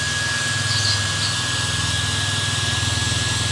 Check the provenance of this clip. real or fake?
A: real